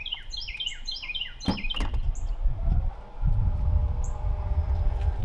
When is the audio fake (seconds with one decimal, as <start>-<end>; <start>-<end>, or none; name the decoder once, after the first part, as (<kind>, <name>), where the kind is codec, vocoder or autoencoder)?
3.8-5.2 (vocoder, BigVGAN v2)